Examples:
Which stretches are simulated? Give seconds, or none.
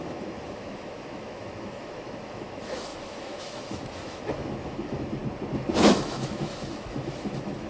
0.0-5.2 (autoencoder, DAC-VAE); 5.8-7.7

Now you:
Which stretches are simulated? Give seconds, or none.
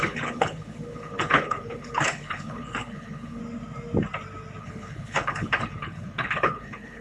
0.0-3.4 (codec, HILCodec); 4.6-7.0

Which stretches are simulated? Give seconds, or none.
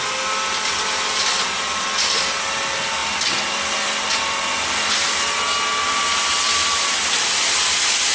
none